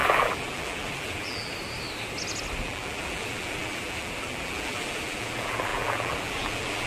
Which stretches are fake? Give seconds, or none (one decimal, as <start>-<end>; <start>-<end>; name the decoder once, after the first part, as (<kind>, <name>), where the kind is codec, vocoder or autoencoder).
0.0-1.5 (vocoder, BigVGAN v2); 2.6-6.9